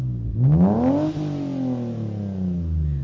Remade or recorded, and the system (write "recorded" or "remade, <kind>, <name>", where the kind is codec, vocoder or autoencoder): recorded